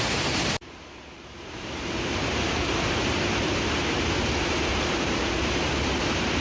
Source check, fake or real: fake